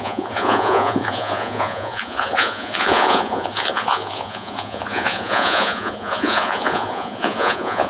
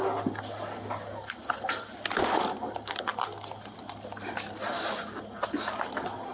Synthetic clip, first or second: first